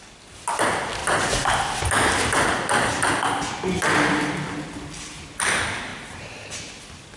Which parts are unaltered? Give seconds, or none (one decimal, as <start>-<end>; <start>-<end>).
0.0-7.2